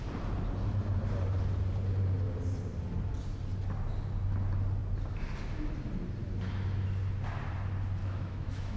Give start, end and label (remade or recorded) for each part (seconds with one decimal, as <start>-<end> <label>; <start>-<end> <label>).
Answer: 0.0-8.0 recorded; 8.0-8.8 remade